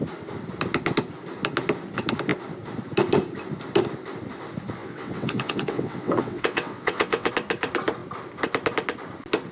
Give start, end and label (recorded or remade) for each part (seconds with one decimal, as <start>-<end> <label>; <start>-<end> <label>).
0.0-4.8 recorded; 4.8-7.3 remade; 7.3-9.5 recorded

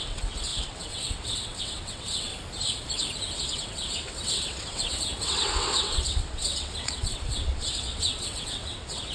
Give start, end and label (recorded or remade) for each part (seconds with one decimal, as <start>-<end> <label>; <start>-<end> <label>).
0.0-2.3 remade; 2.3-3.4 recorded; 3.4-9.1 remade

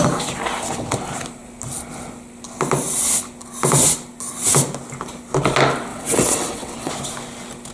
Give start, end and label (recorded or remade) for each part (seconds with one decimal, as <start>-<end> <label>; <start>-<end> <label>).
0.0-5.9 recorded; 5.9-6.9 remade; 6.9-7.7 recorded

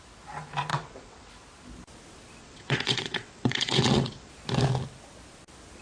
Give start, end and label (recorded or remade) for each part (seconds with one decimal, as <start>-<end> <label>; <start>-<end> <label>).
0.0-0.7 recorded; 0.7-1.3 remade; 1.3-2.4 recorded; 2.4-4.3 remade; 4.3-5.8 recorded

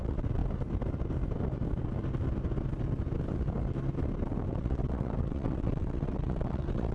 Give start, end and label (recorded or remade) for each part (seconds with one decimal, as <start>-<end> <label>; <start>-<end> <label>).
0.0-0.4 remade; 0.4-4.5 recorded; 4.5-6.9 remade

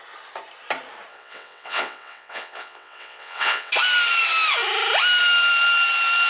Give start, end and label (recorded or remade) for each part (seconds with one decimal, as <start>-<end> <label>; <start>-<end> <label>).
0.0-1.1 recorded; 1.1-3.7 remade; 3.7-6.3 recorded